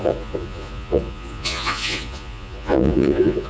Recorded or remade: remade